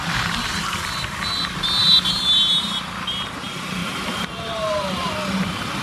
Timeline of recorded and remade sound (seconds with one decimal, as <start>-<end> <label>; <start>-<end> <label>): 0.0-1.8 recorded; 1.8-2.4 remade; 2.4-3.8 recorded; 3.8-5.1 remade; 5.1-5.8 recorded